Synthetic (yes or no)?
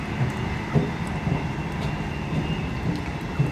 no